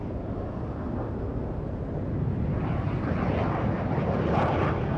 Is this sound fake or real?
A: real